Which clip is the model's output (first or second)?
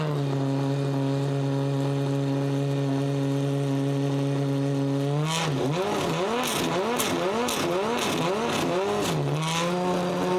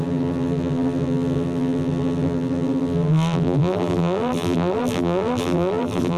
second